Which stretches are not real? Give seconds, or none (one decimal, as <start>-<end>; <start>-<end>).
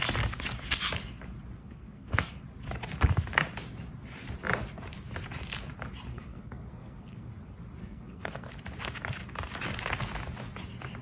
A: 1.6-2.3; 6.1-7.3; 7.8-8.5